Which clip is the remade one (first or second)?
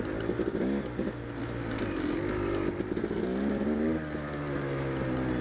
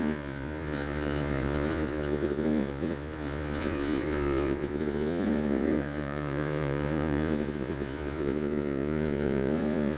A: second